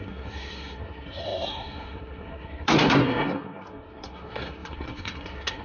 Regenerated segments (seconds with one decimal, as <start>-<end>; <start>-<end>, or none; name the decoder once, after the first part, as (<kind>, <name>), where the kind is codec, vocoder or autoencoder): 0.0-5.6 (codec, SNAC)